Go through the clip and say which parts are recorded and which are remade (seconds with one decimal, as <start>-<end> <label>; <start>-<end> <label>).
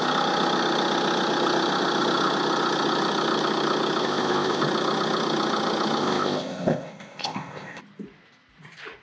0.0-4.0 recorded; 4.0-4.6 remade; 4.6-6.0 recorded; 6.0-7.8 remade; 7.8-9.0 recorded